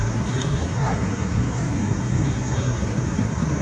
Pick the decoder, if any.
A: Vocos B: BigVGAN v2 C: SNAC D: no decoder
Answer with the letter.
C